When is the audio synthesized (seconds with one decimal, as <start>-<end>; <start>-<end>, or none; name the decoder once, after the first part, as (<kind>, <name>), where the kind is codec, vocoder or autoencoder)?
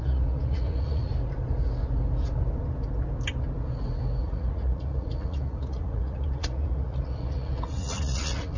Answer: 0.0-1.1 (vocoder, Vocos); 4.2-8.6